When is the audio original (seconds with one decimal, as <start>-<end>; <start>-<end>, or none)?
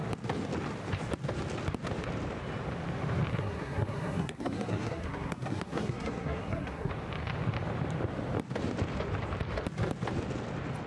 0.0-3.3; 6.9-10.9